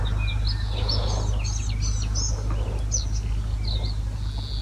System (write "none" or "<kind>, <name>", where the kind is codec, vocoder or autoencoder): none